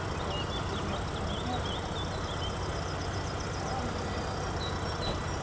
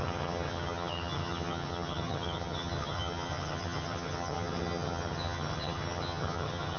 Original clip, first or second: first